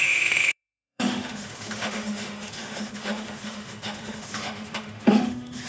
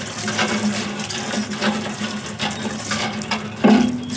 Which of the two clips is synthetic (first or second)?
first